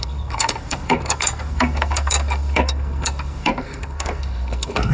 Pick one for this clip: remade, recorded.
remade